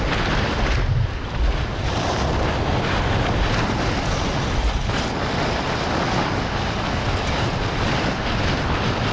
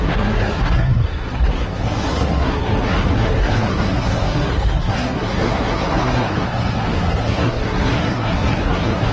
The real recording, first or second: first